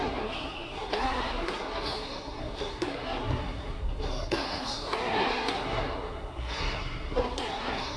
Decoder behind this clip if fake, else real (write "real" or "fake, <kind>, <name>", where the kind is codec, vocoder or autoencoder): fake, codec, SNAC